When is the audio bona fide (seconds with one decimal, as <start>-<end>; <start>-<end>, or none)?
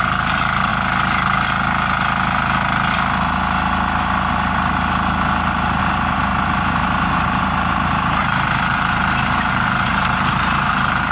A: 0.7-5.8